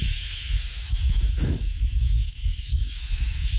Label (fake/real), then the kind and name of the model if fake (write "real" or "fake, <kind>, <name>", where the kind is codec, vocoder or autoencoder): fake, autoencoder, DAC-VAE